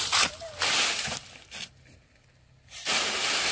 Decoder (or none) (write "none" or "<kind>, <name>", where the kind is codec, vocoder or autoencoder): none